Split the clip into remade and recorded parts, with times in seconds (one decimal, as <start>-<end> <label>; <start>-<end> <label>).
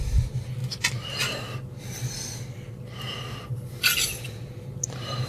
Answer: 0.0-5.3 recorded